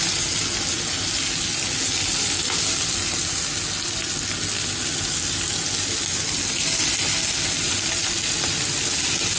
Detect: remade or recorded recorded